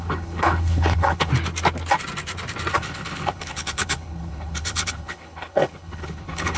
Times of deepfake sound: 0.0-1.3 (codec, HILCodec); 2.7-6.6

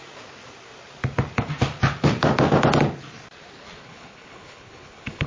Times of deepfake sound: 3.8-5.3 (codec, HILCodec)

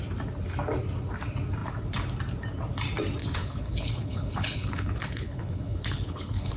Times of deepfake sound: 3.2-6.6 (codec, HILCodec)

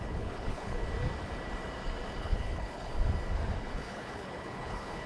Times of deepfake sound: 0.0-0.8 (codec, HILCodec); 2.2-2.9; 3.6-5.1

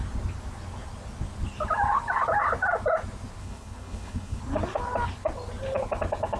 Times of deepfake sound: 3.4-4.4 (codec, HILCodec)

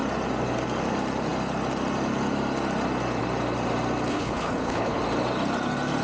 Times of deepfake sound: 4.1-5.0 (codec, HILCodec)